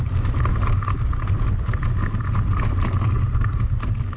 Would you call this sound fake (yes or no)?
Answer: no